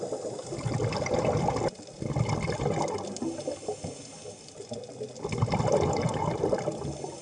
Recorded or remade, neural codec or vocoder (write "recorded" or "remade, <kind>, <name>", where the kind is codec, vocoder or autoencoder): recorded